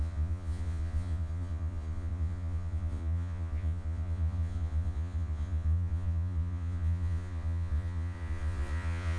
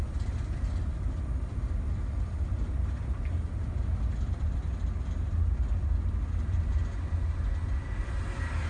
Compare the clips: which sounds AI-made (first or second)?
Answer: first